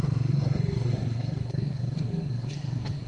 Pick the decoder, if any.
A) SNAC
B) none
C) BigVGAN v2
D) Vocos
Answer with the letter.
A